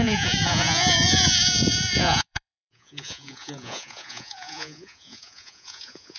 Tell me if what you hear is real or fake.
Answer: fake